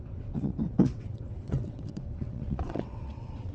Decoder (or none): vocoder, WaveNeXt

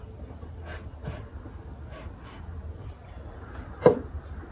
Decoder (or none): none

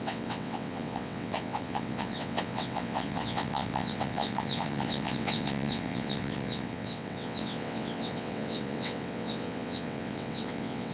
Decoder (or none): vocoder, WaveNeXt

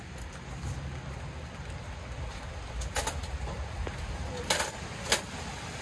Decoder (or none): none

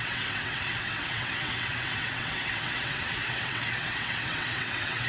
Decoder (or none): vocoder, WaveNeXt